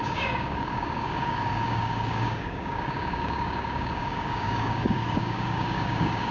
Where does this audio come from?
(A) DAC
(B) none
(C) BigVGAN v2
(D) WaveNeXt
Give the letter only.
A